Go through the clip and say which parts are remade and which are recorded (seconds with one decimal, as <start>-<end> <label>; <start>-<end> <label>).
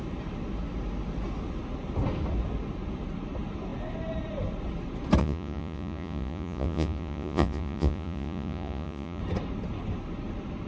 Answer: 0.0-5.2 recorded; 5.2-9.2 remade; 9.2-10.7 recorded